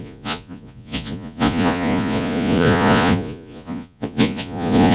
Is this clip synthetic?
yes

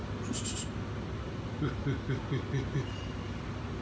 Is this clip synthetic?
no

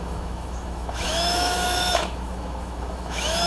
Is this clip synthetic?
yes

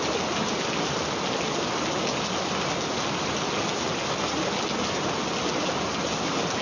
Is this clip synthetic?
no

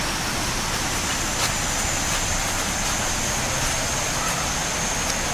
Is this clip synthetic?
no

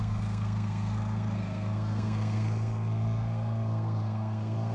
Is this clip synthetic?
yes